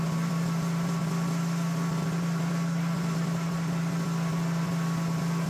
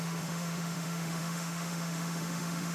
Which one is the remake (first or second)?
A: second